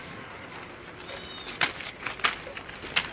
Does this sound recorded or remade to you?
recorded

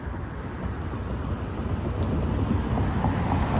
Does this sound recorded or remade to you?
recorded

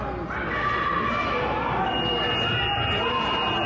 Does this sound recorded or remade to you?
recorded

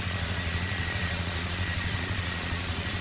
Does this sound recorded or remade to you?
remade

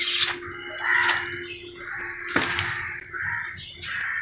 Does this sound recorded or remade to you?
recorded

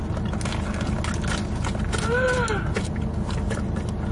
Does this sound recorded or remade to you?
recorded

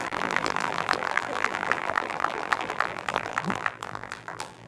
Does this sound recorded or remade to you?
remade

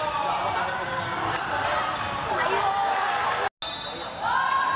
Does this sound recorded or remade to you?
recorded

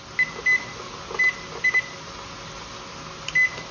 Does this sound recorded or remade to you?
recorded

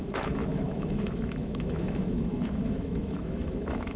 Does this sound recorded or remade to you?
remade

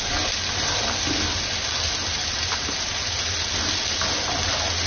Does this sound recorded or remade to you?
recorded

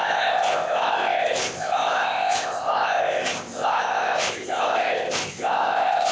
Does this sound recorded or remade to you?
remade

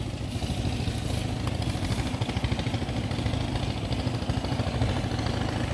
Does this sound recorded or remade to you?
recorded